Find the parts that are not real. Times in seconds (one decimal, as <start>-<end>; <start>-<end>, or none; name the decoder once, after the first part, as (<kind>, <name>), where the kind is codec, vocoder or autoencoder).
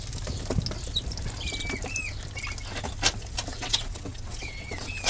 3.5-5.1 (vocoder, WaveNeXt)